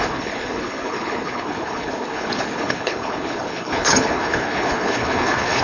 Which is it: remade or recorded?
remade